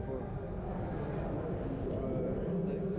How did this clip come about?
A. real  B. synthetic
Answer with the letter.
A